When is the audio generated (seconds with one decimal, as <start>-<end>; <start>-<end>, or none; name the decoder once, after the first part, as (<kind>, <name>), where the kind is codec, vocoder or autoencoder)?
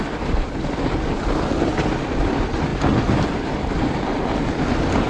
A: none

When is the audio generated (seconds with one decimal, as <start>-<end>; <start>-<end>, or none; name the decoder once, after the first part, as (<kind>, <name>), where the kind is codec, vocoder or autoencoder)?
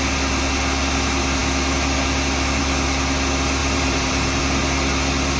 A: 3.6-4.4 (vocoder, BigVGAN v2)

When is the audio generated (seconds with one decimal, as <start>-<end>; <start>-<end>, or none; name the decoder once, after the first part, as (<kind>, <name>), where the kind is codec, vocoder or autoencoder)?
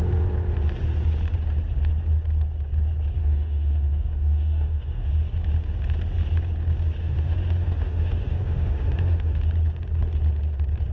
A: 3.2-5.1 (autoencoder, DAC-VAE); 7.0-9.4